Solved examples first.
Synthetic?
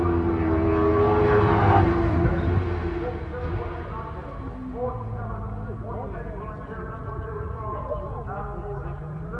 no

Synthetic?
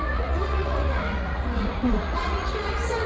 yes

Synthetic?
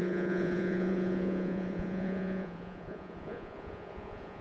yes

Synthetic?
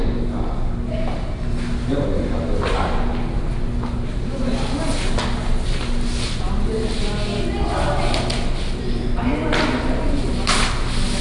no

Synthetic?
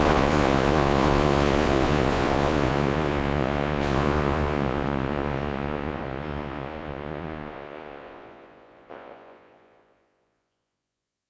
yes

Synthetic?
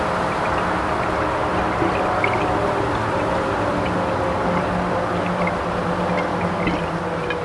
no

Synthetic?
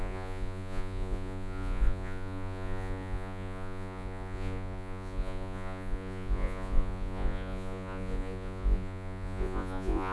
yes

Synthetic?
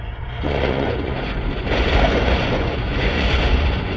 yes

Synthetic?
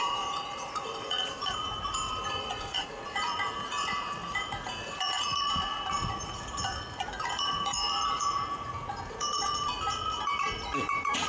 yes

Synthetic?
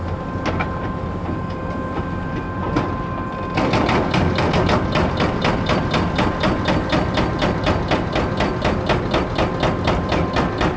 no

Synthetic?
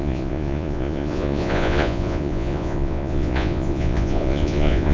yes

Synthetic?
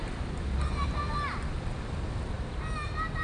no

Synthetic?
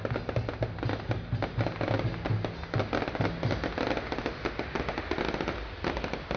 no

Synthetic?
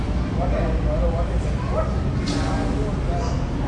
no